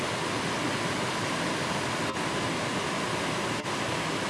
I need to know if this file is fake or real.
real